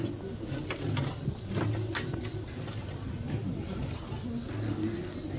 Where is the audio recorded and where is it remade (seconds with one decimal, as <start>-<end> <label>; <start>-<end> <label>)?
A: 0.0-5.4 recorded